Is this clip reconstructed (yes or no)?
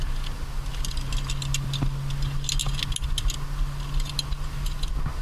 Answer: no